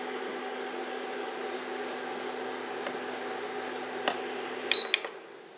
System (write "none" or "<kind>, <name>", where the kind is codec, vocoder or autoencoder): none